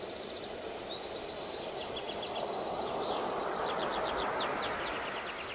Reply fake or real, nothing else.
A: real